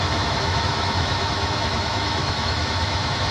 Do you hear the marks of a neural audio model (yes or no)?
yes